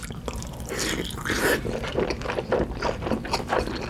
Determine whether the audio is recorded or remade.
remade